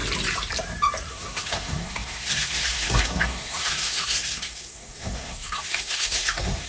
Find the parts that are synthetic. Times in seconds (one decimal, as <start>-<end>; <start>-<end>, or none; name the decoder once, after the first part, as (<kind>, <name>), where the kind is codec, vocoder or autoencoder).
1.1-6.7 (codec, SNAC)